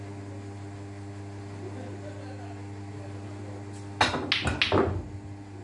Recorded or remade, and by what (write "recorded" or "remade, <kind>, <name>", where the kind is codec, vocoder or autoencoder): recorded